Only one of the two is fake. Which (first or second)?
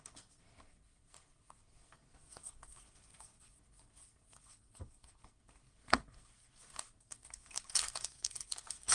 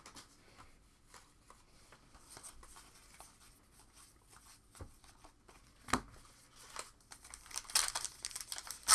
first